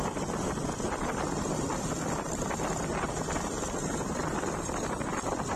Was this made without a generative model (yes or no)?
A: yes